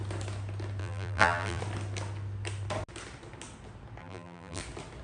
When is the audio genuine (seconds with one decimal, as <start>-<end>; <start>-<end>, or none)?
0.0-0.8; 1.6-4.0; 4.6-5.0